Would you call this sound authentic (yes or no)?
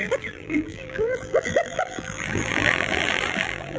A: no